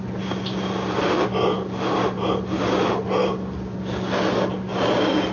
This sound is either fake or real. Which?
real